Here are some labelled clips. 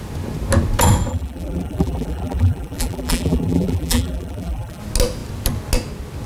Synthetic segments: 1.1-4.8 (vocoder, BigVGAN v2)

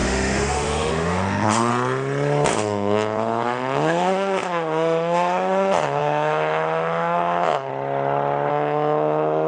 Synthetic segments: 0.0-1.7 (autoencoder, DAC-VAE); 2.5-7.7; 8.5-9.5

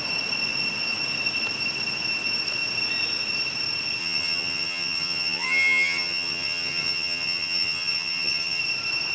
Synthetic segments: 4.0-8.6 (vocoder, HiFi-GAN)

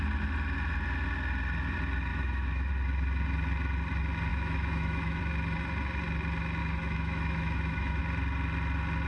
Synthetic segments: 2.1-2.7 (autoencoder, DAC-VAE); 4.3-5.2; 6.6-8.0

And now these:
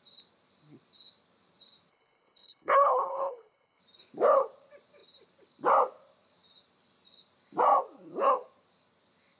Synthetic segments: 1.9-3.8 (codec, HILCodec)

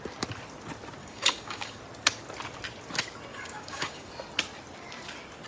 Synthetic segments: 1.0-1.8 (codec, DAC); 3.3-4.1

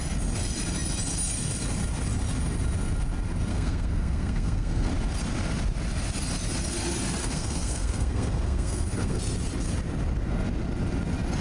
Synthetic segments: 3.5-4.9 (codec, SNAC); 7.2-9.2